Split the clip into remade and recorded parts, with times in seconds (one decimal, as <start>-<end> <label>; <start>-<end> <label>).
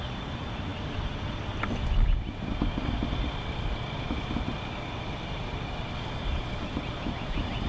0.0-0.7 remade; 0.7-2.8 recorded; 2.8-4.5 remade; 4.5-7.0 recorded; 7.0-7.7 remade